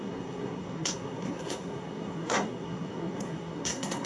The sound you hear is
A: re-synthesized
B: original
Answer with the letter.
A